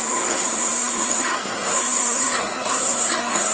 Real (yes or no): no